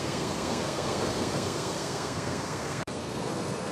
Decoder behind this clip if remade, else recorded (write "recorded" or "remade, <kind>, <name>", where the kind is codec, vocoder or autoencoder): remade, codec, SNAC